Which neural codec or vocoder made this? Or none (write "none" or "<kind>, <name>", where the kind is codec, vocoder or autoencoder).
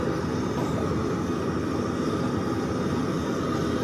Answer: none